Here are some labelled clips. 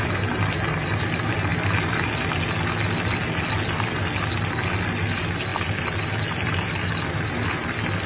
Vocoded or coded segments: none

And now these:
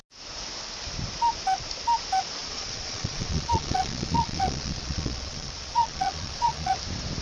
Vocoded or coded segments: 2.4-6.7 (vocoder, Vocos)

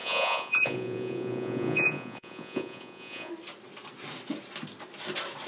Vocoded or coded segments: 0.0-3.3 (vocoder, Vocos)

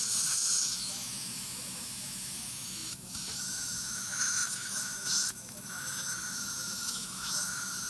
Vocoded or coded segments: 0.0-7.9 (autoencoder, DAC-VAE)

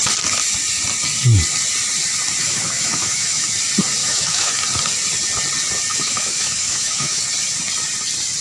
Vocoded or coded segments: 2.4-3.5 (autoencoder, DAC-VAE); 4.0-4.5; 5.9-7.2

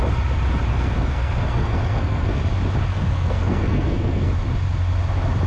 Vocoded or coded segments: 0.7-2.4 (codec, SNAC); 2.9-4.3

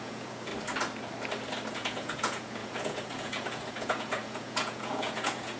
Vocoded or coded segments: 0.0-0.5 (vocoder, Vocos); 1.7-5.6

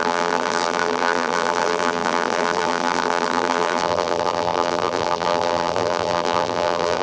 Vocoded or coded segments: 0.0-7.0 (vocoder, BigVGAN v2)